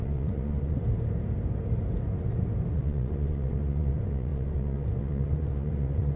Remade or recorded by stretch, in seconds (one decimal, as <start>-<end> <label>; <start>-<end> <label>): 0.0-0.8 remade; 0.8-2.7 recorded; 2.7-6.2 remade

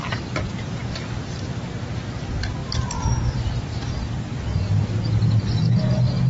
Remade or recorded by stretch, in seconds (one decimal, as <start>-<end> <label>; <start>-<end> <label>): 0.0-6.3 recorded

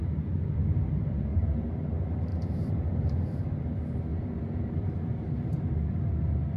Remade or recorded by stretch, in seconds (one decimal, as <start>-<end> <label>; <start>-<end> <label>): 0.0-1.3 recorded; 1.3-1.9 remade; 1.9-2.3 recorded; 2.3-3.4 remade; 3.4-4.1 recorded; 4.1-5.7 remade; 5.7-6.6 recorded

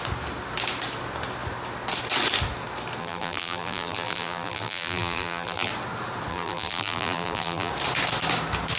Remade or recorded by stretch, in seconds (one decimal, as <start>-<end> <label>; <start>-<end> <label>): 0.0-3.0 recorded; 3.0-5.7 remade; 5.7-6.3 recorded; 6.3-7.7 remade; 7.7-8.8 recorded

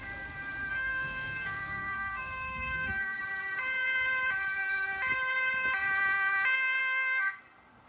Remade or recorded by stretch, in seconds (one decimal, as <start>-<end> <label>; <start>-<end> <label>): 0.0-0.7 recorded; 0.7-3.2 remade; 3.2-6.8 recorded; 6.8-7.4 remade; 7.4-7.9 recorded

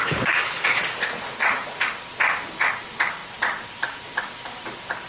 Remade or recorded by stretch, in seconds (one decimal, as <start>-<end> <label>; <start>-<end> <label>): 0.0-0.8 remade; 0.8-5.1 recorded

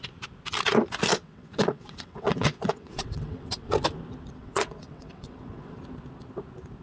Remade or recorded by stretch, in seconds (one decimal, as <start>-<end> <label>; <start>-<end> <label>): 0.0-1.1 recorded; 1.1-3.7 remade; 3.7-4.4 recorded; 4.4-5.8 remade; 5.8-6.8 recorded

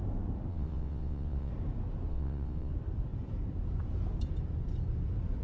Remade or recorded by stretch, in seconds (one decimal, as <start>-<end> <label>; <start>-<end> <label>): 0.0-0.5 recorded; 0.5-1.5 remade; 1.5-2.1 recorded; 2.1-2.7 remade; 2.7-5.4 recorded